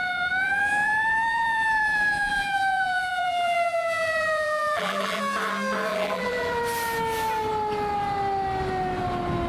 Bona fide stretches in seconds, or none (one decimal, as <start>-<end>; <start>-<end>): 5.2-5.9; 6.6-9.5